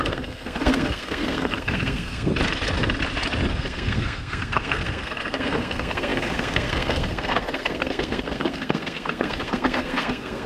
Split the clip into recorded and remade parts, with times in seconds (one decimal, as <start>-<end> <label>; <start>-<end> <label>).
0.0-2.3 remade; 2.3-3.5 recorded; 3.5-10.5 remade